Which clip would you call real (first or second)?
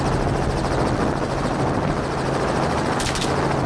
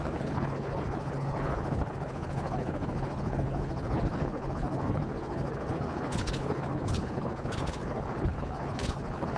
first